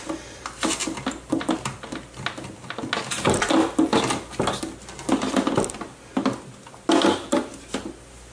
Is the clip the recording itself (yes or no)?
yes